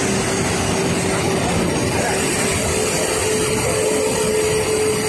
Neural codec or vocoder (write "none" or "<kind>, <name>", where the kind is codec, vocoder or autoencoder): none